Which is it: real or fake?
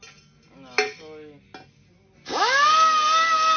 real